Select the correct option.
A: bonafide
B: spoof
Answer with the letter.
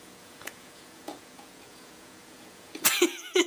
B